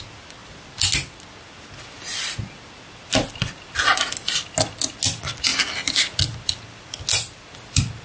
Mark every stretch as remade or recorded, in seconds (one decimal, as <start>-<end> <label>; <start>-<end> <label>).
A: 0.0-8.0 recorded